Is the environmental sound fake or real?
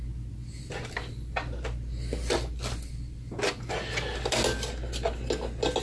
real